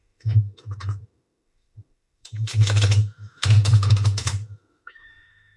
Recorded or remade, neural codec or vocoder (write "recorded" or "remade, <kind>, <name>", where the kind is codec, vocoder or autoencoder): remade, autoencoder, DAC-VAE